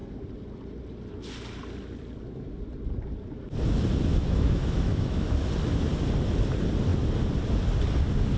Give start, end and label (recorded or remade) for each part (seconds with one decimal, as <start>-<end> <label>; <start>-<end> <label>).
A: 0.0-4.1 recorded; 4.1-5.3 remade; 5.3-8.4 recorded